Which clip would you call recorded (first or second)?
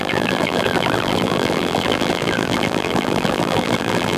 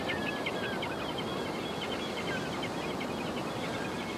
second